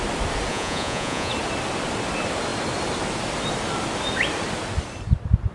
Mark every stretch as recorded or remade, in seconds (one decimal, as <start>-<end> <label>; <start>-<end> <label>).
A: 0.0-0.5 recorded; 0.5-1.3 remade; 1.3-5.5 recorded